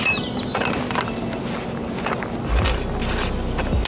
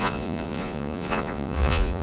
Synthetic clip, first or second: second